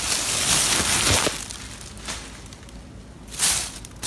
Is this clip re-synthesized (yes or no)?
no